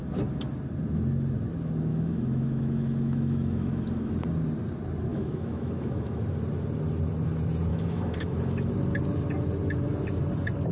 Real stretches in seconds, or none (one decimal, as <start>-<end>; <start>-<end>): 0.0-1.9; 4.1-5.1; 6.2-7.7; 8.7-10.7